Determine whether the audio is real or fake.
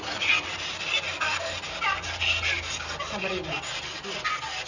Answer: real